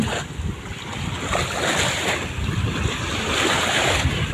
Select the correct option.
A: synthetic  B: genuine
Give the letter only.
B